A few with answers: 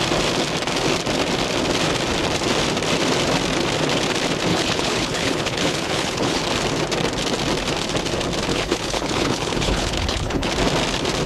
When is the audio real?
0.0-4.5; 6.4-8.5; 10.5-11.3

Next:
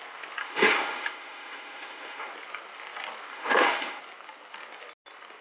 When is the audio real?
0.0-0.4; 2.3-3.3; 4.0-5.4

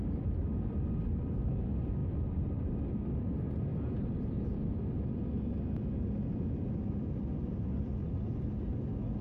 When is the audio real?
0.0-9.2